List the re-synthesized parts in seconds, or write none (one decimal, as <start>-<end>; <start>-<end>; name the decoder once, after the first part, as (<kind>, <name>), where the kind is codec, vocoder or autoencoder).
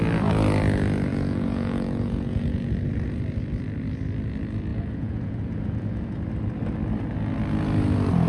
1.1-2.7 (vocoder, Vocos); 4.7-6.1